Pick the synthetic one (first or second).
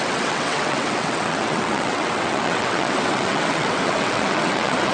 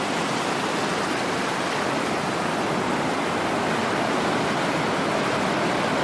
first